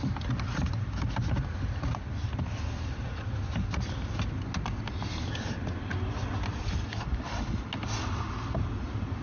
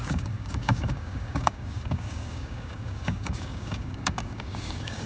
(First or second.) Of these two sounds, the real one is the first